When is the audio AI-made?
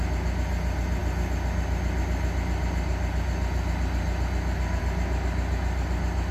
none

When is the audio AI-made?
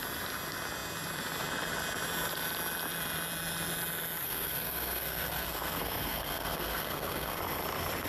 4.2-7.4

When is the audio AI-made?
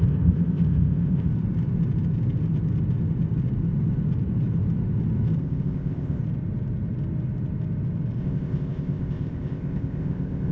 0.0-1.3; 5.4-6.2; 8.2-10.5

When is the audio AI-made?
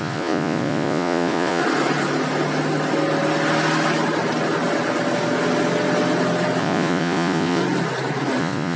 0.0-1.6; 6.6-7.6; 8.4-8.8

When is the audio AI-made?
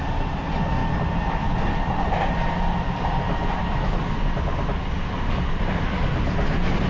none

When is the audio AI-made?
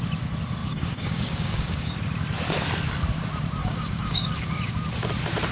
0.6-2.0; 3.6-4.7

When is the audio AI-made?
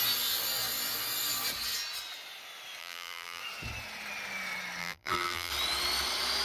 2.8-3.4; 4.8-5.5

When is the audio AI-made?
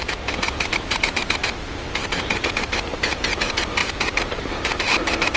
0.0-1.4; 2.1-5.4